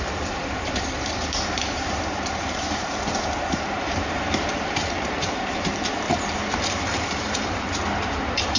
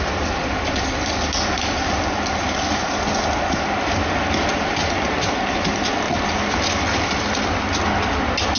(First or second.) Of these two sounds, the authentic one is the second